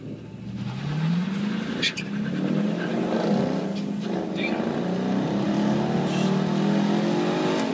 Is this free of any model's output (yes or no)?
yes